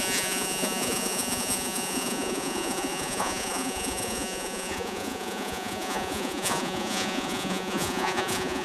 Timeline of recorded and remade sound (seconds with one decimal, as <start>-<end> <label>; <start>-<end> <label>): 0.0-8.6 remade